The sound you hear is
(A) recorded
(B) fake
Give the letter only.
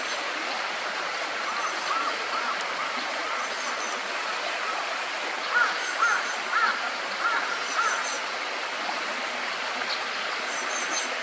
A